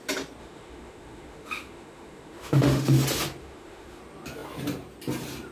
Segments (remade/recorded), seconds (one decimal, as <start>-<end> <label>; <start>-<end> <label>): 0.0-0.4 recorded; 0.4-2.9 remade; 2.9-3.4 recorded; 3.4-4.0 remade; 4.0-5.5 recorded